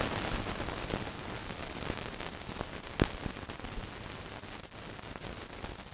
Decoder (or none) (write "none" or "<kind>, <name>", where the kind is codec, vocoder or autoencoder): none